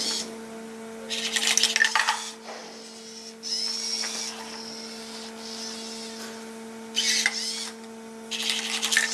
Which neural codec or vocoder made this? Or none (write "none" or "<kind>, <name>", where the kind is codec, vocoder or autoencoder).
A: none